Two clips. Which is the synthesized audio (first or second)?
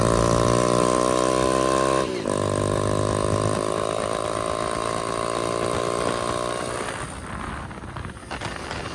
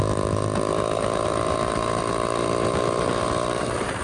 second